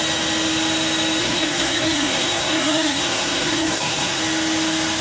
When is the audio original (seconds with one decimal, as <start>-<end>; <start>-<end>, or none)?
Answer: 0.0-1.2; 4.2-5.0

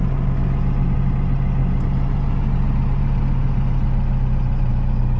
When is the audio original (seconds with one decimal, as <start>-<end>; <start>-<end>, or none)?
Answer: 0.0-5.2

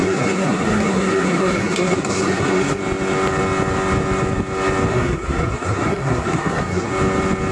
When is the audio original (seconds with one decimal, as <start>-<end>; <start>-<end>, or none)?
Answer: 2.8-4.9; 6.9-7.5

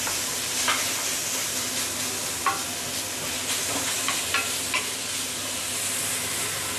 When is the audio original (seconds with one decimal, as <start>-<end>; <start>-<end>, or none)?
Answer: 0.0-6.8

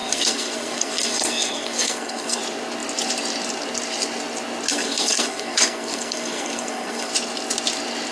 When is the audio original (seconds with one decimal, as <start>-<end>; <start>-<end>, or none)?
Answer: 2.4-4.7; 7.1-8.1

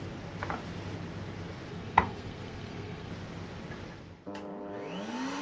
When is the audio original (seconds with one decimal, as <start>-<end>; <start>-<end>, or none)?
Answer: 0.0-1.7; 3.1-5.4

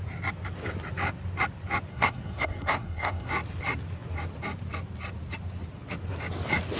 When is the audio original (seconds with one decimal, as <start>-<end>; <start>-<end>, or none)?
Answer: 0.0-1.9; 3.3-6.8